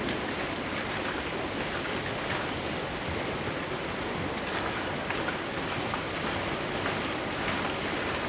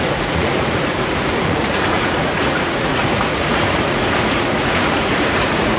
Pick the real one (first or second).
first